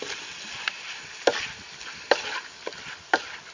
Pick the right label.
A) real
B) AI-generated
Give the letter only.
A